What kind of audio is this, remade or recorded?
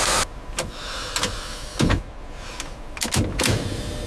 recorded